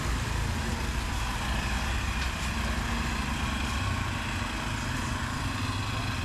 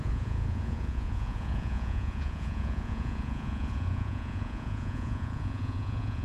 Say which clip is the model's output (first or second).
second